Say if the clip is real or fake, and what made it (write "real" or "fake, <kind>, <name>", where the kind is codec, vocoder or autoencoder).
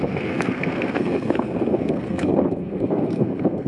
fake, codec, SNAC